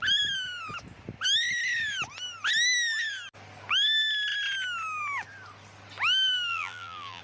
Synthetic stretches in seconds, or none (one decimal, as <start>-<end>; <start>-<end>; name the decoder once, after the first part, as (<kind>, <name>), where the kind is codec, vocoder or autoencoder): 6.5-7.2 (vocoder, BigVGAN v2)